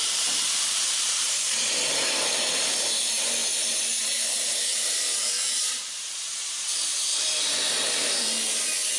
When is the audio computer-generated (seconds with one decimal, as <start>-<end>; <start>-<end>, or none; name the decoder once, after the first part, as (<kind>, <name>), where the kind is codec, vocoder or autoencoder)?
0.0-7.1 (vocoder, BigVGAN v2); 8.2-9.0